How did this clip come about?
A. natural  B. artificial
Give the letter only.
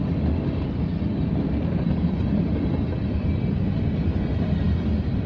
A